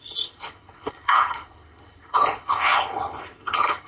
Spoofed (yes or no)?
yes